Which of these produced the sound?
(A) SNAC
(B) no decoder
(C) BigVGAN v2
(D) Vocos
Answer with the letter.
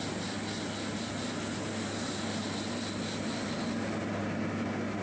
B